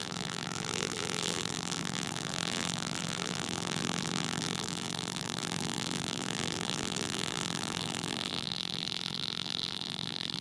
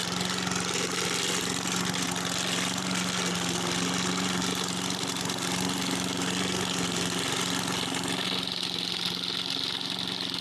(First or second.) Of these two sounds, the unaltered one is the second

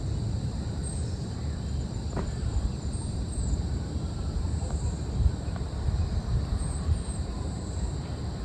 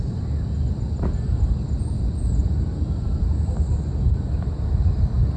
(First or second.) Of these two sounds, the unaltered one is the second